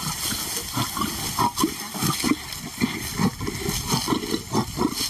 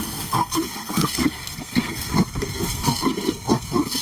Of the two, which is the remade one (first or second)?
second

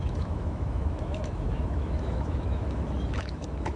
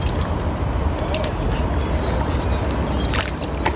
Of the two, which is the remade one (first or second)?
first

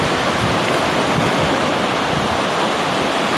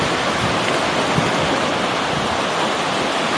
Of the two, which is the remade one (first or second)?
first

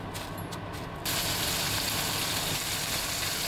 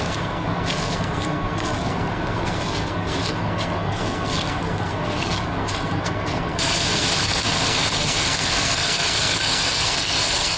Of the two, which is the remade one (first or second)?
second